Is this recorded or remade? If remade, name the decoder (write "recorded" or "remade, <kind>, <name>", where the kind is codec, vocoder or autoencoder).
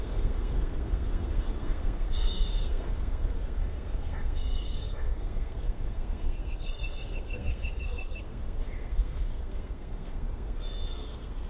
remade, codec, SNAC